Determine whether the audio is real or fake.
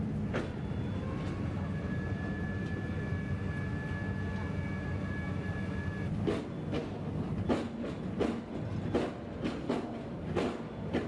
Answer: real